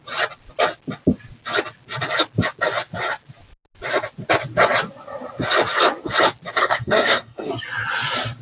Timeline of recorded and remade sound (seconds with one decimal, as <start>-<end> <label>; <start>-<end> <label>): 0.0-6.6 recorded; 6.6-7.5 remade; 7.5-8.4 recorded